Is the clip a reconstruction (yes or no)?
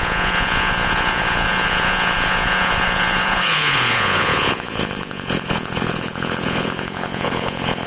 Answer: yes